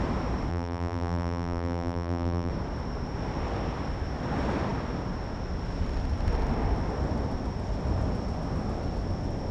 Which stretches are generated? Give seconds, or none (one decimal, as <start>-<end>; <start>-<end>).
0.5-2.5